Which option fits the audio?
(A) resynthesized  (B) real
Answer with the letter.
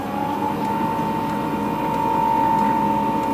B